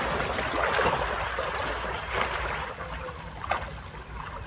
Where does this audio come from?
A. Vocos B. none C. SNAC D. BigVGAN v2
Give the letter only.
B